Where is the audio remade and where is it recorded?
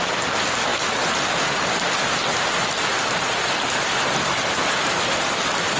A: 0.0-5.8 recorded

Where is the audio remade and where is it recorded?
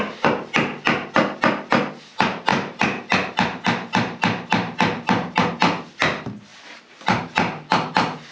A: 0.0-2.5 recorded; 2.5-5.5 remade; 5.5-6.5 recorded; 6.5-7.2 remade; 7.2-8.3 recorded